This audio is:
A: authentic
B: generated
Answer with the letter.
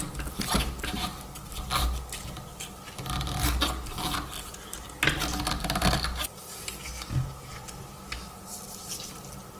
A